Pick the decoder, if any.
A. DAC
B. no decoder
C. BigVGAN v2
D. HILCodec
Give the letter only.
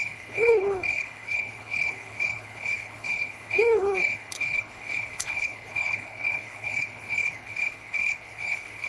D